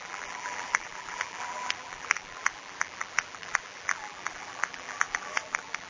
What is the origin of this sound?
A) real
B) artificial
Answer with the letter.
B